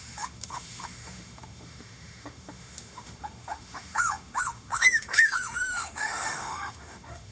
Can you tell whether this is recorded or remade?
remade